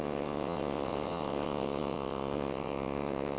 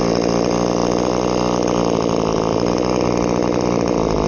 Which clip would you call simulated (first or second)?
first